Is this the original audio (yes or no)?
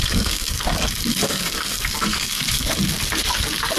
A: no